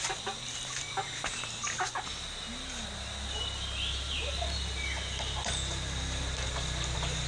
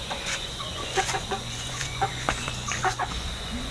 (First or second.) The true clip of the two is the first